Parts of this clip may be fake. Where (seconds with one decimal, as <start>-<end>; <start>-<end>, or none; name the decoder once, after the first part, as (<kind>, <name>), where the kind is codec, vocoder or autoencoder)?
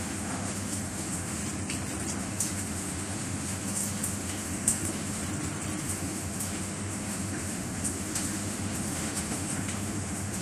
0.0-1.4 (autoencoder, DAC-VAE); 2.2-5.2; 5.8-10.4